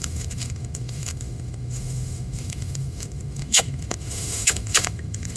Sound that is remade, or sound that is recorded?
remade